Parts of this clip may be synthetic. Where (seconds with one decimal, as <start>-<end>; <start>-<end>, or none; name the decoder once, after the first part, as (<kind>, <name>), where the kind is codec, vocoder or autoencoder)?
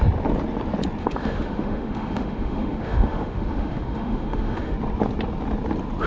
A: 1.0-4.7 (autoencoder, DAC-VAE)